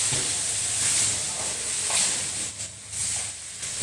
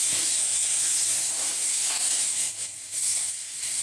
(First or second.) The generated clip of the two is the second